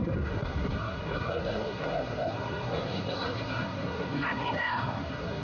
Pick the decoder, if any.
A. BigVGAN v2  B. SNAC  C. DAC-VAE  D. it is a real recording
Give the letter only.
B